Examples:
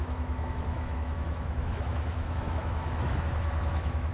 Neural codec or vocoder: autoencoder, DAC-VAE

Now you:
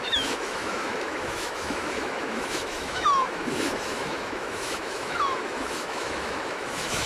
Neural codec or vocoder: autoencoder, DAC-VAE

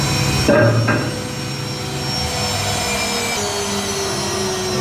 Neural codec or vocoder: none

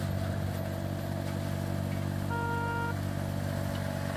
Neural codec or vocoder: none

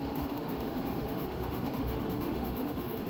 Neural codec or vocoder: autoencoder, DAC-VAE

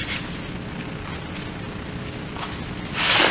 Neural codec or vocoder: none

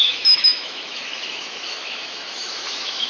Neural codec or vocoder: autoencoder, DAC-VAE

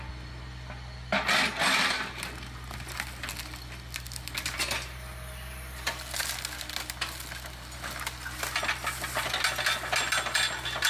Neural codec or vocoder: none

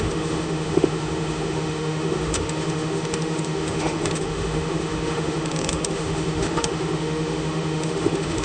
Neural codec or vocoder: autoencoder, DAC-VAE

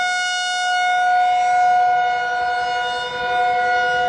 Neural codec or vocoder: none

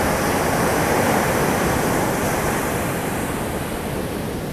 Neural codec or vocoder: none